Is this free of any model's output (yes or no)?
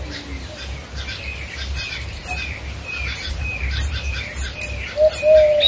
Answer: yes